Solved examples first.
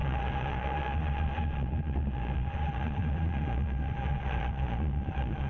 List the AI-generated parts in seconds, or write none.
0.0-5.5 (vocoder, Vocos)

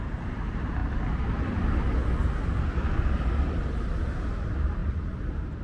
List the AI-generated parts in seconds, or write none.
0.0-0.8 (vocoder, BigVGAN v2); 4.2-5.6